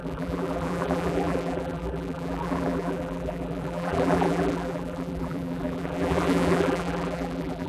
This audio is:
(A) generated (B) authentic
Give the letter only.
A